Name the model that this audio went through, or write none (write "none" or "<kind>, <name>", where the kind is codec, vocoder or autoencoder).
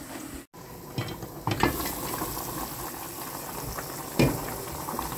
none